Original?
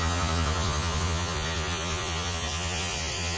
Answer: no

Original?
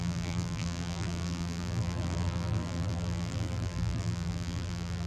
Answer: no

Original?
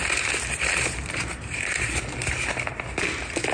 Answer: no